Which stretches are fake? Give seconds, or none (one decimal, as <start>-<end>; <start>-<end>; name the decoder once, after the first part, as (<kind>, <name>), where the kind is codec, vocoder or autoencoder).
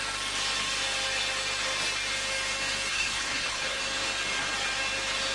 2.9-3.8 (codec, HILCodec)